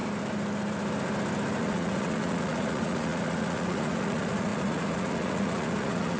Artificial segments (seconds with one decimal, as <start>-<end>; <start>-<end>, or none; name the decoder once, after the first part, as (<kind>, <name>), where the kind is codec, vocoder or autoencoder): 1.6-6.2 (vocoder, Vocos)